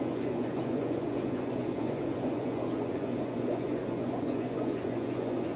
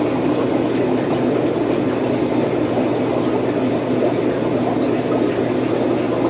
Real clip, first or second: second